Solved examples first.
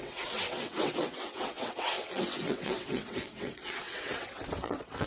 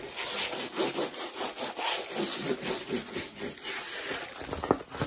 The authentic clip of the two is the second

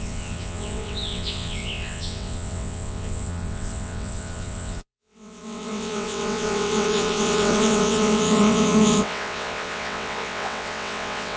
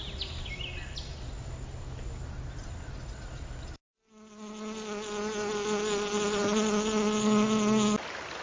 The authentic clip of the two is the second